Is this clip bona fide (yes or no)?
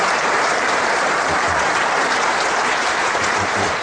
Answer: no